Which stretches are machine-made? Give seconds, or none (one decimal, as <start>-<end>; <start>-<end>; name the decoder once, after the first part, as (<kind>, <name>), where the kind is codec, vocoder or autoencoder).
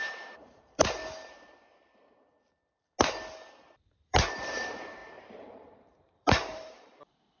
0.0-1.0 (vocoder, BigVGAN v2); 4.0-7.4